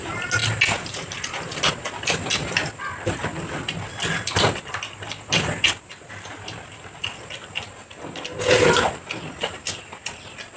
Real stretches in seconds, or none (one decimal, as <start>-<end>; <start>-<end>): 0.0-10.6